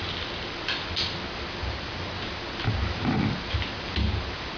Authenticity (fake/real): real